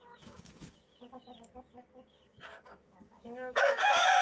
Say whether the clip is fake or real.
fake